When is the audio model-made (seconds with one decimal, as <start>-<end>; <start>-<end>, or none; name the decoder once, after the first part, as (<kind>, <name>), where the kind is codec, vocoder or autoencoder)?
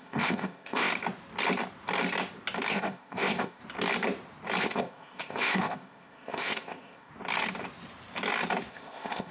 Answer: 0.0-0.9 (codec, ZipCodec); 2.7-3.6; 4.6-7.1; 8.7-9.3